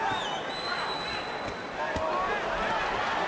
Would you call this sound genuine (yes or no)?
yes